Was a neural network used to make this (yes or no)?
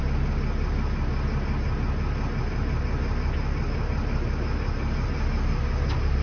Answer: no